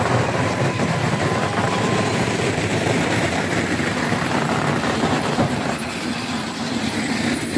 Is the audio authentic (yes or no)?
no